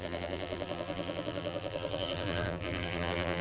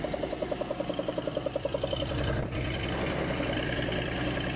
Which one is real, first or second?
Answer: second